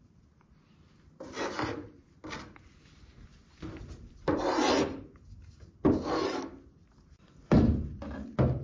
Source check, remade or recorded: recorded